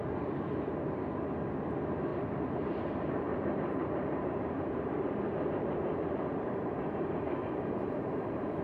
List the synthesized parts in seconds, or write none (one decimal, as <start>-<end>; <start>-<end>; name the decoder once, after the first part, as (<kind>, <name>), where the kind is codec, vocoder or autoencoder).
2.1-2.7 (vocoder, BigVGAN v2); 3.3-8.6